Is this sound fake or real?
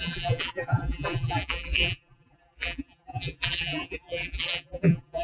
fake